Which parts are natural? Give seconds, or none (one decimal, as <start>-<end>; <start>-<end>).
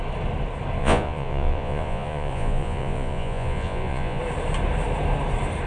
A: 0.0-0.8; 4.2-5.7